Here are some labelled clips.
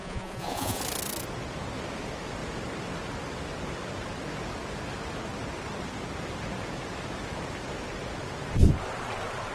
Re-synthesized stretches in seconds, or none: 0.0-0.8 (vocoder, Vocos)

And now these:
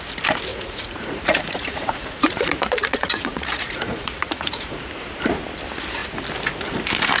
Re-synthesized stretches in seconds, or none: 0.5-4.8 (vocoder, Vocos)

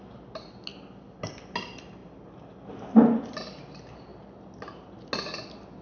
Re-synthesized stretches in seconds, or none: none

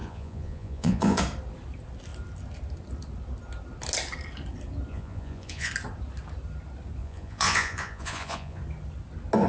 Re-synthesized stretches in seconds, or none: 0.0-1.2 (vocoder, Vocos); 4.9-5.7; 7.0-8.6